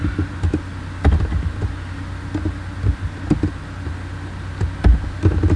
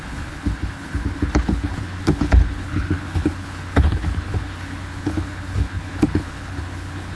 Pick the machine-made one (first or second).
second